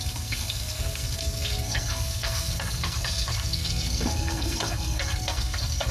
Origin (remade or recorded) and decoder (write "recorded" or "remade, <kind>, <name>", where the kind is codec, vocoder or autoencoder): remade, codec, SNAC